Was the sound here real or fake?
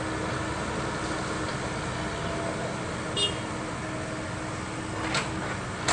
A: real